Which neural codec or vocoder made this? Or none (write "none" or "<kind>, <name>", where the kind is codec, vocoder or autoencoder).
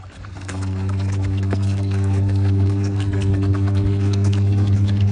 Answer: codec, SNAC